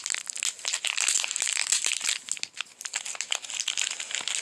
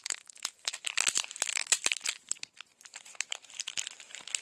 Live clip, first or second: first